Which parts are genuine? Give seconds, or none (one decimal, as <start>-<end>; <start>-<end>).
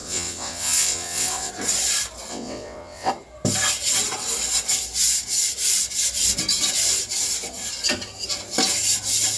1.5-2.3; 3.1-9.4